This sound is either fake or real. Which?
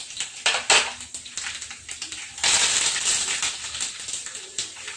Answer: real